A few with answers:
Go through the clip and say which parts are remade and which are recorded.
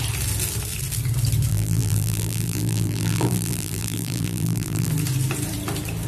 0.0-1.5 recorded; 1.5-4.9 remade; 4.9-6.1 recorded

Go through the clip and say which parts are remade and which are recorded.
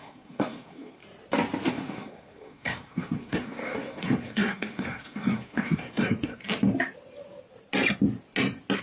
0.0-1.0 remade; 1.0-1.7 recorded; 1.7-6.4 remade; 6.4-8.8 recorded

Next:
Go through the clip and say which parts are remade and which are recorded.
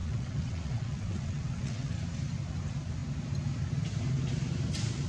0.0-1.9 remade; 1.9-5.1 recorded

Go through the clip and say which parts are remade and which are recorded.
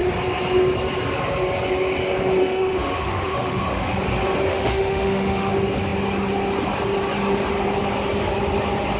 0.0-2.4 recorded; 2.4-3.9 remade; 3.9-4.5 recorded; 4.5-5.5 remade; 5.5-9.0 recorded